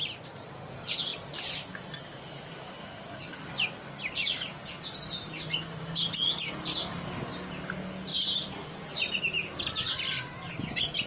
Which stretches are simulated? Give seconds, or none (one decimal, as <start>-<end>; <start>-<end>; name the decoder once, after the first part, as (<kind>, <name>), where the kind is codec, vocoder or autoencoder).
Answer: 1.1-2.7 (vocoder, BigVGAN v2); 8.1-9.2